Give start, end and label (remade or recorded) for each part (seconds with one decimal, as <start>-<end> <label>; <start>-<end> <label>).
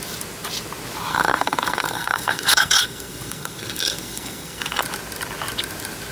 0.0-1.1 recorded; 1.1-4.8 remade; 4.8-6.1 recorded